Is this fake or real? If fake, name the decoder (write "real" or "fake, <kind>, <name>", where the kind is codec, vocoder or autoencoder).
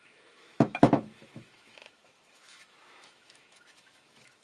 fake, autoencoder, DAC-VAE